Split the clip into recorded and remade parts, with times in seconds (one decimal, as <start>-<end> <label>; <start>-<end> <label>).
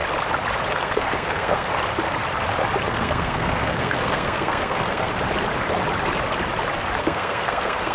0.0-0.7 recorded; 0.7-1.7 remade; 1.7-2.9 recorded; 2.9-5.1 remade; 5.1-7.0 recorded; 7.0-7.9 remade